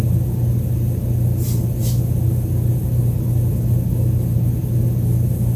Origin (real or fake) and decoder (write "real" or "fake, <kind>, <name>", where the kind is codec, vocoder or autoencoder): real